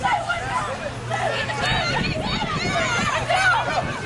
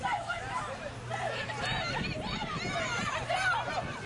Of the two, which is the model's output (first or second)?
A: second